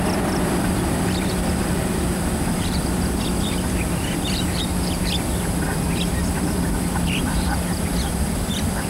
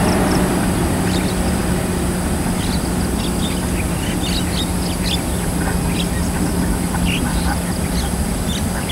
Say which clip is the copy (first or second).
first